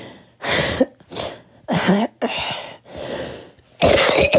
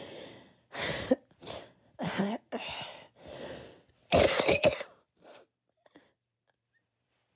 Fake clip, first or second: second